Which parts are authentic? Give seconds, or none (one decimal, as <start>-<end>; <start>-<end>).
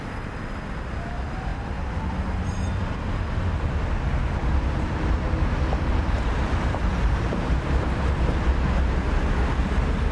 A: 0.0-6.9; 8.1-10.1